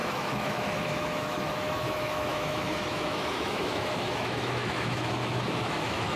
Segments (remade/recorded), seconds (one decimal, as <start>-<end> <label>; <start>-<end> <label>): 0.0-6.2 remade